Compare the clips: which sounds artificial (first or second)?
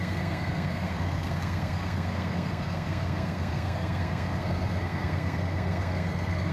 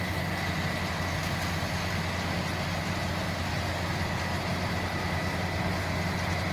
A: first